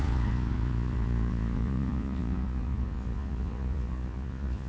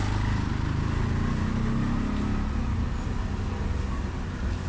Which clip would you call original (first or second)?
second